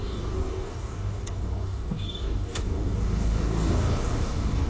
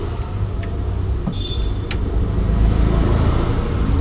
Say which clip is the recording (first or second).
second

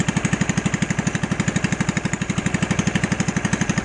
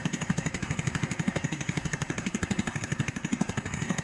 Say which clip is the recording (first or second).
first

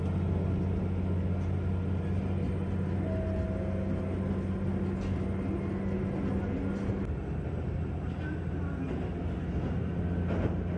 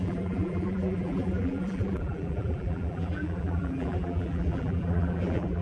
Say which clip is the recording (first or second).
first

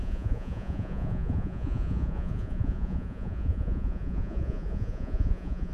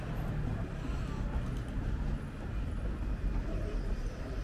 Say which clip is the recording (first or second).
second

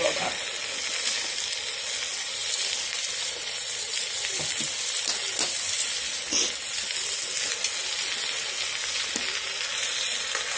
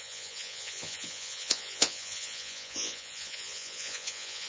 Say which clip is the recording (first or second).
first